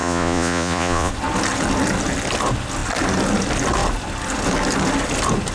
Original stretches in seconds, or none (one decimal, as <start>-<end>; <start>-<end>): 1.1-5.5